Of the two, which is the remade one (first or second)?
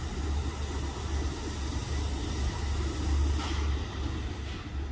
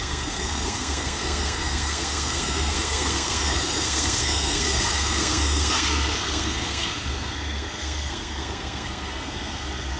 second